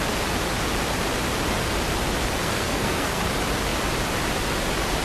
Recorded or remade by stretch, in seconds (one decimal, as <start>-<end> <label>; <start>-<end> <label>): 0.0-2.4 recorded; 2.4-3.2 remade; 3.2-5.0 recorded